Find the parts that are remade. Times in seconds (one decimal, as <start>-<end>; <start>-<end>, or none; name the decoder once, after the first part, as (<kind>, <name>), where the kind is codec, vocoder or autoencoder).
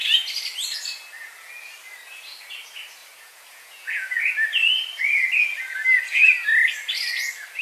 3.0-4.3 (vocoder, Vocos)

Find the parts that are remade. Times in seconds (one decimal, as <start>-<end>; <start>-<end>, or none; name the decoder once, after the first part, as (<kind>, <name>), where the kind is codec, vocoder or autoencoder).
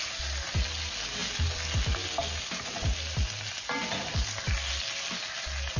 none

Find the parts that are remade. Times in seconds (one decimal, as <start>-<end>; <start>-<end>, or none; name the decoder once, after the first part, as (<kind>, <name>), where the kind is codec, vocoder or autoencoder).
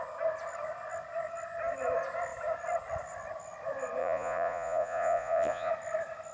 4.0-5.7 (vocoder, Vocos)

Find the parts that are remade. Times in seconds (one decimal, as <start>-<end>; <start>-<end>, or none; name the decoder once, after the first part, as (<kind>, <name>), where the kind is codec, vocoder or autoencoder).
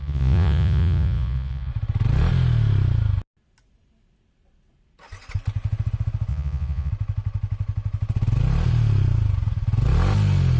0.0-1.7 (vocoder, Vocos); 6.3-6.9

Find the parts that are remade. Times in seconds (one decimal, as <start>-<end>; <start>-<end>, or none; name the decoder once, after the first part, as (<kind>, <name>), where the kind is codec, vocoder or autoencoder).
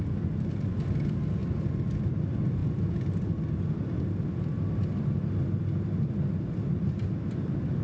none